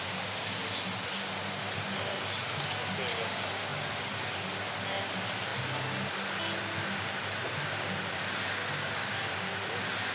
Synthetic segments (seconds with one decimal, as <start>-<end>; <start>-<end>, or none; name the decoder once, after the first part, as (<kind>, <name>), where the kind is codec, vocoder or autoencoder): none